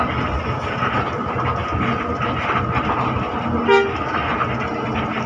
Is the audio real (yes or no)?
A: yes